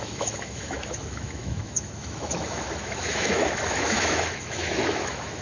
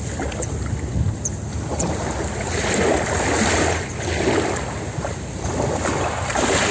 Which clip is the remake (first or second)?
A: first